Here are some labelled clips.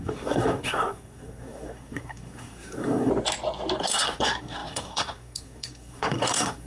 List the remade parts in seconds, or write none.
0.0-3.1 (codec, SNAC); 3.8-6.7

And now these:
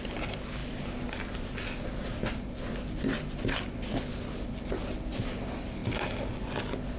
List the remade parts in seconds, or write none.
none

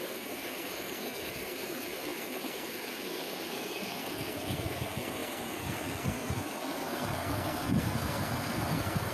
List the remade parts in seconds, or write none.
0.0-9.1 (codec, SNAC)

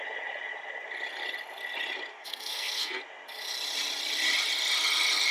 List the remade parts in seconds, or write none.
2.1-3.0 (codec, SNAC)

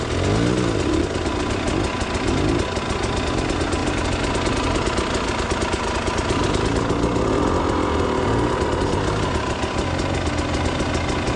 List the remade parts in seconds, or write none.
none

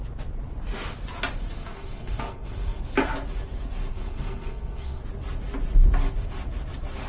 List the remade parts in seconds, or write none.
1.6-2.8 (codec, SNAC); 3.9-5.0

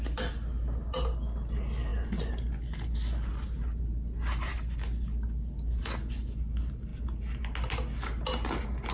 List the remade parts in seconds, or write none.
none

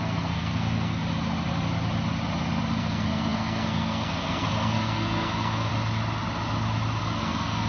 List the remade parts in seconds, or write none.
0.0-1.0 (codec, SNAC); 2.8-5.7; 7.0-7.7